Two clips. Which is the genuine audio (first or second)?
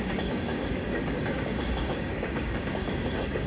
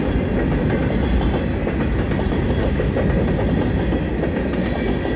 second